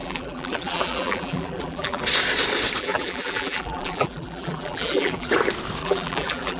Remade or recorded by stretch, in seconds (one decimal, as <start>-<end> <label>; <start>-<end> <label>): 0.0-2.0 remade; 2.0-2.8 recorded; 2.8-5.3 remade; 5.3-5.8 recorded; 5.8-6.6 remade